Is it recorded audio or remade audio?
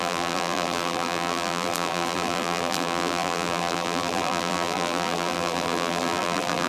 remade